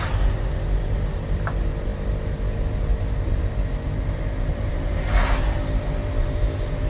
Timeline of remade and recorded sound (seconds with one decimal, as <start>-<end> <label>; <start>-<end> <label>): 0.0-6.9 recorded